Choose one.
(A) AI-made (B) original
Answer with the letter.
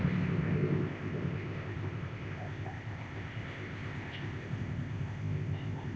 A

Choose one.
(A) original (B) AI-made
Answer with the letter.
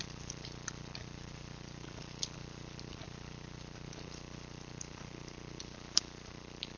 A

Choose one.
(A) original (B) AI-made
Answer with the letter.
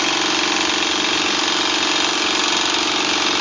A